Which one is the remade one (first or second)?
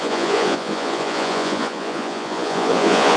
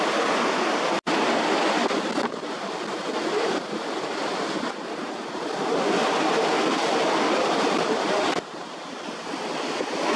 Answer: first